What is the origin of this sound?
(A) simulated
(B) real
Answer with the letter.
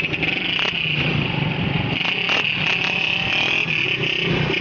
B